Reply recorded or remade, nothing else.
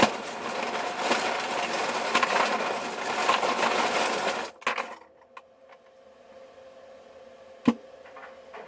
recorded